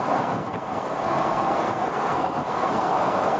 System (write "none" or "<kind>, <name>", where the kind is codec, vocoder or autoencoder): codec, SNAC